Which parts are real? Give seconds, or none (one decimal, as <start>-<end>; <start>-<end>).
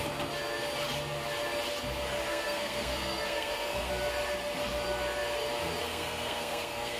0.0-2.3; 3.9-5.8